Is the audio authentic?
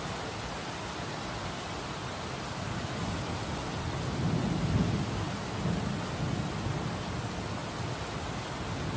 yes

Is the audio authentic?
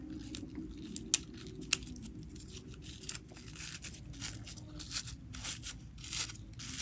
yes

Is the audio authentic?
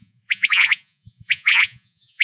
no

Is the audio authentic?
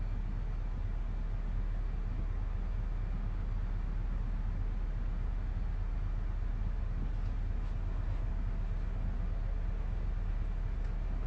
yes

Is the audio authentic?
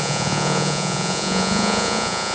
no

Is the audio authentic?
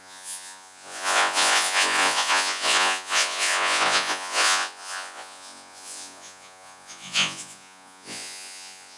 no